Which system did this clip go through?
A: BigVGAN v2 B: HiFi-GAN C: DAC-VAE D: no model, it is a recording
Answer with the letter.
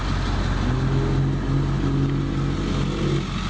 D